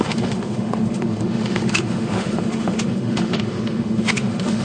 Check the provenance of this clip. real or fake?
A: fake